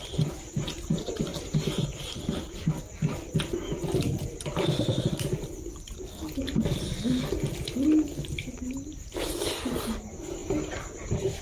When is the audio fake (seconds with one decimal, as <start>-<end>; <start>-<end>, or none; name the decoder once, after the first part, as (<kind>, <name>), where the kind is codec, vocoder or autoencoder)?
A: 1.3-3.2 (vocoder, BigVGAN v2); 4.5-6.2